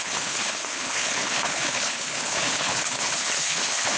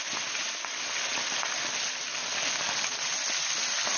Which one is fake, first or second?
first